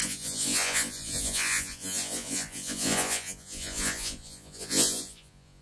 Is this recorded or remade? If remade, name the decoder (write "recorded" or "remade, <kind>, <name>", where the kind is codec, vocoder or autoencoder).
remade, vocoder, Vocos